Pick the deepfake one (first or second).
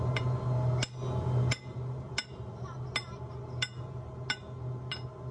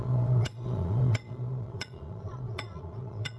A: second